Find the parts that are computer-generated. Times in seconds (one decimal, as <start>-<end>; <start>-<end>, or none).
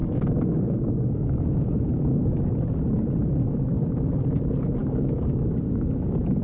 0.0-2.2; 4.8-6.4